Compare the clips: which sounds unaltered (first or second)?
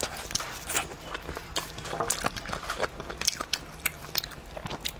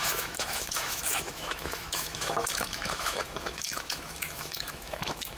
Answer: first